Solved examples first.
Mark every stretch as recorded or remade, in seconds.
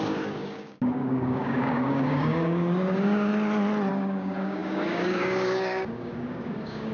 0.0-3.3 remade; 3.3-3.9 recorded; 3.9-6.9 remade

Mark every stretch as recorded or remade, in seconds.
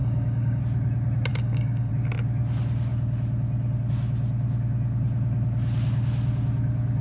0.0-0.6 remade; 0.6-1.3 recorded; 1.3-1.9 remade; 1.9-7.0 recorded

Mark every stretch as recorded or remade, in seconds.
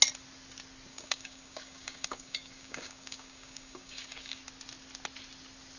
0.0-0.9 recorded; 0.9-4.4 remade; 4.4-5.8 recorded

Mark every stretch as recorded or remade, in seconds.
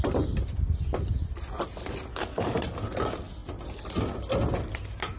0.0-2.1 recorded; 2.1-2.6 remade; 2.6-5.2 recorded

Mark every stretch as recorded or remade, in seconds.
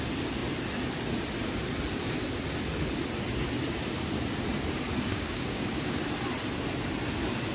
0.0-5.1 recorded; 5.1-6.0 remade; 6.0-7.5 recorded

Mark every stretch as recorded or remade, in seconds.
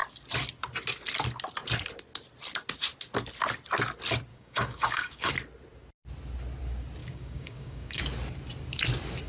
0.0-4.3 recorded; 4.3-5.3 remade; 5.3-7.0 recorded; 7.0-8.0 remade; 8.0-9.3 recorded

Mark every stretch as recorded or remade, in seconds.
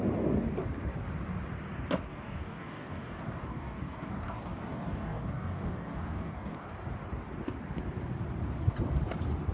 0.0-2.1 recorded; 2.1-6.7 remade; 6.7-9.5 recorded